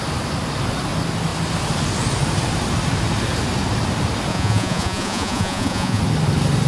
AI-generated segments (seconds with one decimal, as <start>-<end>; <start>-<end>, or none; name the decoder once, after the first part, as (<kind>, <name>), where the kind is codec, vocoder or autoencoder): 4.3-6.0 (vocoder, Vocos)